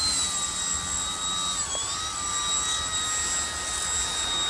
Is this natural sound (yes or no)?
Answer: yes